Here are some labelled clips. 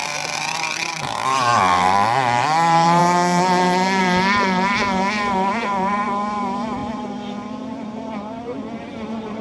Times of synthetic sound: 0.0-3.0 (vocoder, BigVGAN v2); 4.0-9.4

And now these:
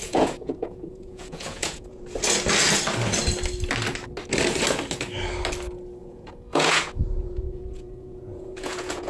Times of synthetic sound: 0.0-2.0 (vocoder, Vocos); 6.0-9.1

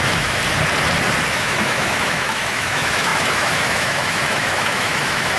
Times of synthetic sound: 0.0-0.4 (autoencoder, DAC-VAE); 1.3-5.4

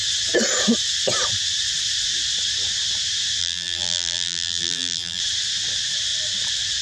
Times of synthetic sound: 3.4-5.2 (vocoder, BigVGAN v2)

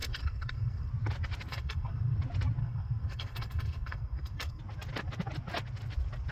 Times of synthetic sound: 0.0-0.9 (codec, SNAC); 1.5-2.2; 2.6-4.6

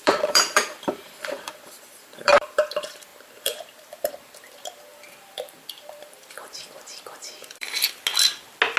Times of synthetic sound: 0.0-8.0 (vocoder, BigVGAN v2)

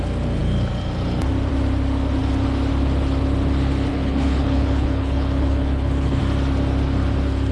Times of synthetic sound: 3.9-6.2 (codec, HILCodec)